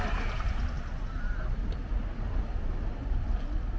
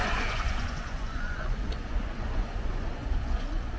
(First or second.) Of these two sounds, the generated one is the second